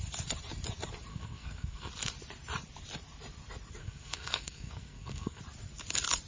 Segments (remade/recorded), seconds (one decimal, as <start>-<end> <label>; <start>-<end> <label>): 0.0-1.1 recorded; 1.1-1.9 remade; 1.9-3.8 recorded; 3.8-5.4 remade; 5.4-6.3 recorded